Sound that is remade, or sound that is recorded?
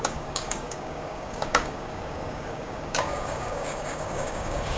remade